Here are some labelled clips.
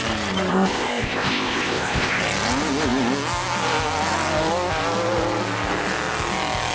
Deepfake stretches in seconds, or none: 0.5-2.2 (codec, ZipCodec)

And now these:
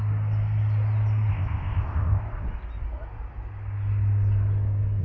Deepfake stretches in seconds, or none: 1.3-2.2 (codec, ZipCodec)

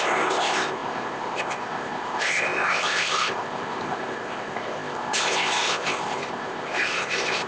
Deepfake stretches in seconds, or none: 0.0-7.5 (codec, ZipCodec)

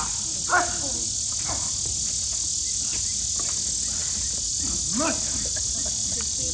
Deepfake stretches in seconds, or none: none